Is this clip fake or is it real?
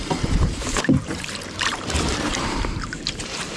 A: fake